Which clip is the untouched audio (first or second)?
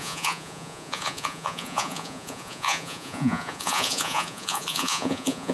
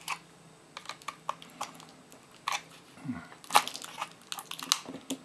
second